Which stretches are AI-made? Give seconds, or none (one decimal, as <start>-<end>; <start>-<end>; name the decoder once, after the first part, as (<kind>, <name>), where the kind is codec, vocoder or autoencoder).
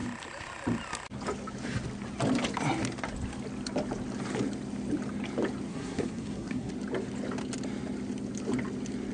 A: 5.7-6.7 (codec, SNAC)